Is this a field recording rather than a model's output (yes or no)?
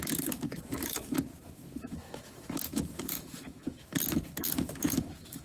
no